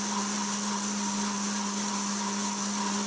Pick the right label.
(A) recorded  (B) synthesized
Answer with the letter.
A